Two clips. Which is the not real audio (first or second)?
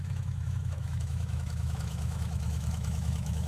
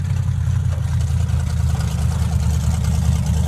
first